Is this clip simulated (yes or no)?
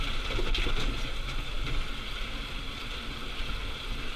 no